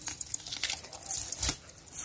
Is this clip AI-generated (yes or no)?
no